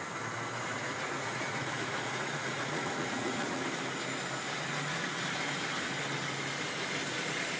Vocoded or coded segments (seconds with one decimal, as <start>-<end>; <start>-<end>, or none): 0.7-3.6